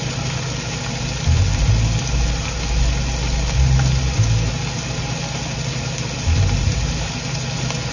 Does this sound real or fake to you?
real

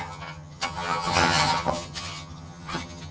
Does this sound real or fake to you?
fake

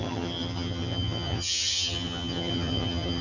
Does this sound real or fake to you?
fake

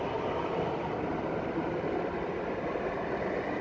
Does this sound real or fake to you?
real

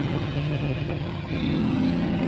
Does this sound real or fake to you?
fake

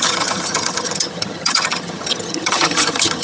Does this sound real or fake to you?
fake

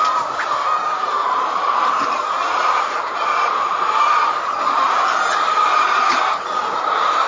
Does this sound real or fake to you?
real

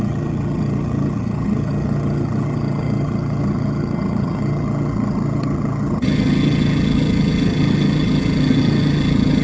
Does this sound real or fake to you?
fake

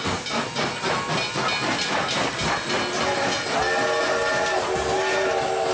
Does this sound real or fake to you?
real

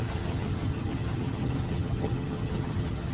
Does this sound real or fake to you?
fake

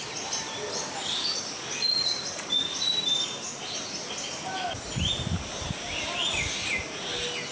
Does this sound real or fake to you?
real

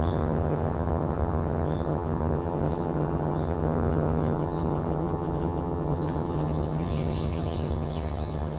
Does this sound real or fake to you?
fake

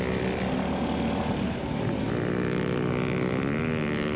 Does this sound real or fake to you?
real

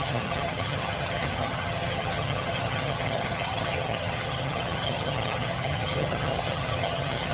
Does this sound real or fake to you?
fake